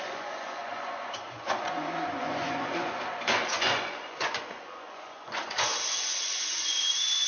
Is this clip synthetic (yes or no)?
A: yes